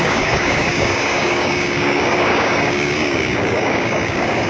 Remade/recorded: remade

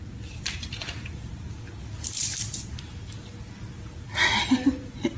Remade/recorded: recorded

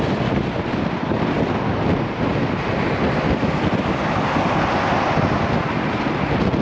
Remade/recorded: recorded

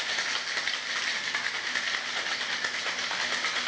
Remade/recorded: recorded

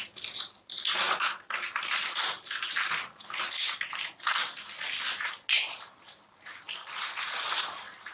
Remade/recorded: recorded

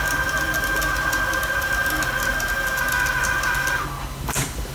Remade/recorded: recorded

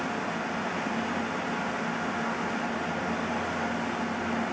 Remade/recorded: recorded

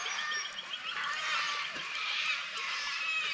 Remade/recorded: recorded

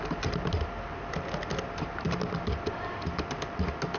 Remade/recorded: recorded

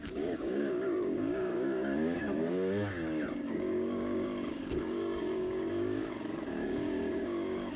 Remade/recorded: remade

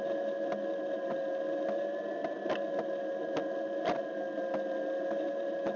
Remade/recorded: recorded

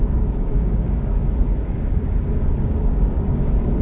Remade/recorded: remade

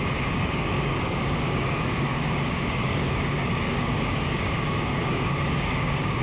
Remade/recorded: remade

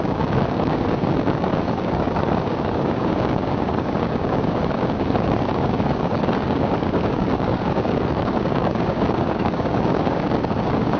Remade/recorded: remade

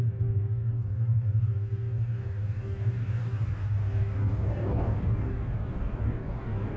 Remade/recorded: remade